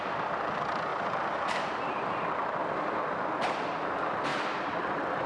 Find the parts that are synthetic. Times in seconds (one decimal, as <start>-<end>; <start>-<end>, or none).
0.9-1.7; 4.3-5.3